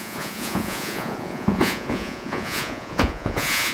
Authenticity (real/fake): fake